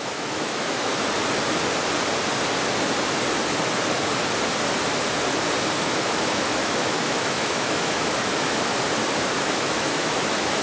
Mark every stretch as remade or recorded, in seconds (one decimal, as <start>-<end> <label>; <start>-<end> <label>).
0.0-0.9 remade; 0.9-5.8 recorded; 5.8-8.7 remade; 8.7-9.4 recorded; 9.4-10.6 remade